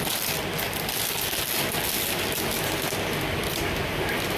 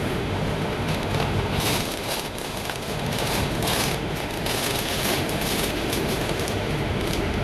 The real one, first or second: first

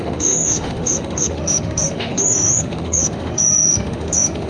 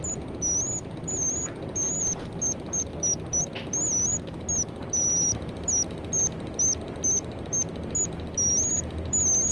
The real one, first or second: second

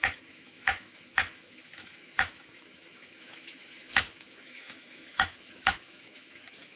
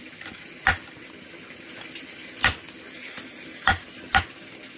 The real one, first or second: second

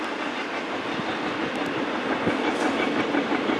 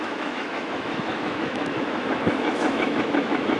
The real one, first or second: first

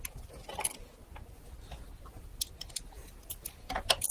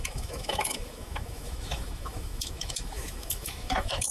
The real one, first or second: first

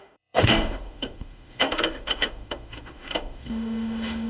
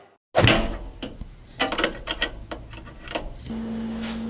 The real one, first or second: second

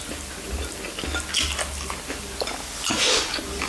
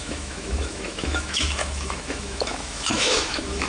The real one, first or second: first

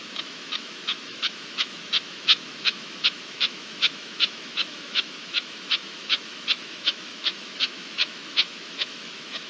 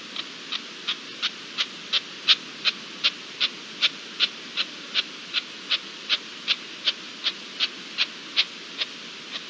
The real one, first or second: second